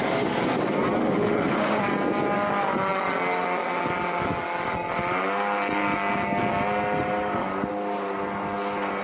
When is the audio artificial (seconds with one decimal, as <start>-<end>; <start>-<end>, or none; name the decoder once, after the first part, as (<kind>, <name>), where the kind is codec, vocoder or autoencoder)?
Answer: 1.0-1.8 (autoencoder, DAC-VAE)